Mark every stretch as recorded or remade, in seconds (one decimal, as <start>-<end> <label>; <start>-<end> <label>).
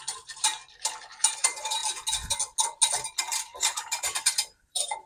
0.0-0.5 remade; 0.5-1.2 recorded; 1.2-1.8 remade; 1.8-3.2 recorded; 3.2-5.1 remade